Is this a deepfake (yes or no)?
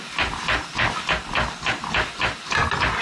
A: yes